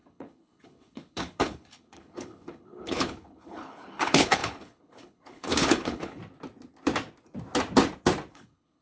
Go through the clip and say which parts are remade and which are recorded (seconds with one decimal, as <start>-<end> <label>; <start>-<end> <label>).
0.0-6.2 remade; 6.2-8.3 recorded; 8.3-8.8 remade

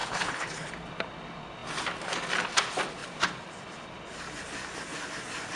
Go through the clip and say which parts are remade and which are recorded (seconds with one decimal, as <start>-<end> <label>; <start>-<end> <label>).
0.0-0.7 remade; 0.7-5.6 recorded

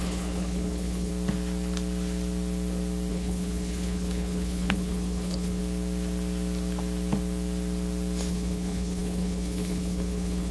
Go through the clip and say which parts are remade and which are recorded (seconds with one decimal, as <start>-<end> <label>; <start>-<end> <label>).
0.0-1.1 remade; 1.1-3.1 recorded; 3.1-5.6 remade; 5.6-8.3 recorded; 8.3-10.5 remade

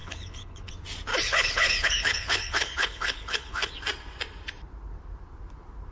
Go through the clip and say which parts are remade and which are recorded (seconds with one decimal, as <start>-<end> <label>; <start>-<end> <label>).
0.0-0.7 remade; 0.7-1.1 recorded; 1.1-3.7 remade; 3.7-5.9 recorded

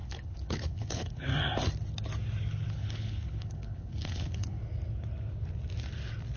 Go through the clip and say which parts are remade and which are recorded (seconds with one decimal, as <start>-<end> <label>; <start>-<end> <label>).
0.0-1.3 remade; 1.3-2.7 recorded; 2.7-4.6 remade; 4.6-6.4 recorded